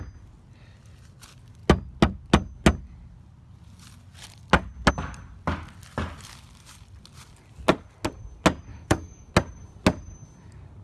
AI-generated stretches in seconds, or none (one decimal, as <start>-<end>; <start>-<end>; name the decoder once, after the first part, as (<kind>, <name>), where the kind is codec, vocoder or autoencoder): 8.7-9.3 (autoencoder, DAC-VAE)